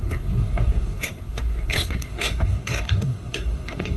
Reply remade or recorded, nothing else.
remade